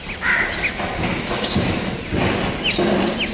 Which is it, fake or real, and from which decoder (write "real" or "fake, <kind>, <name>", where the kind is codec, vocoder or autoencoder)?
real